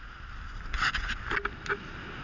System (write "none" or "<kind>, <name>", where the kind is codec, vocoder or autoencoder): none